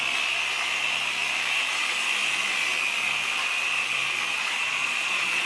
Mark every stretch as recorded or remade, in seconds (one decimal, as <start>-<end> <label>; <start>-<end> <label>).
0.0-4.4 recorded; 4.4-5.5 remade